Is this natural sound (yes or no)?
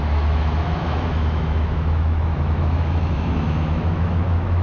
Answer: no